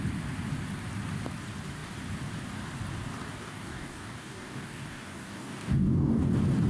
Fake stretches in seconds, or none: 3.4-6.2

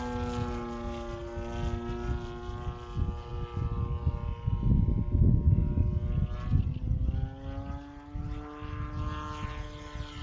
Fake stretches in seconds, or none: none